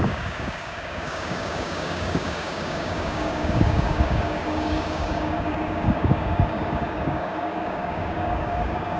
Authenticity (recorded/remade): remade